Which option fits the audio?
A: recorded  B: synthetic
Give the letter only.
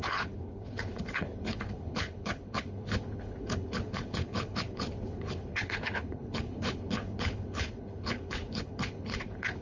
B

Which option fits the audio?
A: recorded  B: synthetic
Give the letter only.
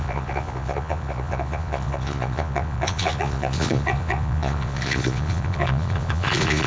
B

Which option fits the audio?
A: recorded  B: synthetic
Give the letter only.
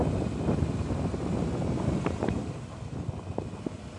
A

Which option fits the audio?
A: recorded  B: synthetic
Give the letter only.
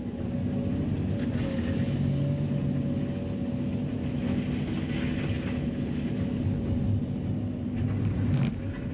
A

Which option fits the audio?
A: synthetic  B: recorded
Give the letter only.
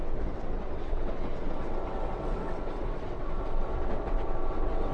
A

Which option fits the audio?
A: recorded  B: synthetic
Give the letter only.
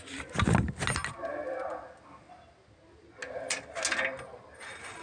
A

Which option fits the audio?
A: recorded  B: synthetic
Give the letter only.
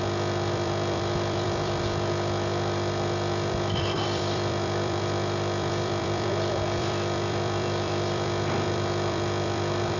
B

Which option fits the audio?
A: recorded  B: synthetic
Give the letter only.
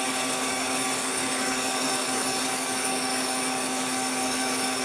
B